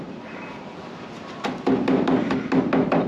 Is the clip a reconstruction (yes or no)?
no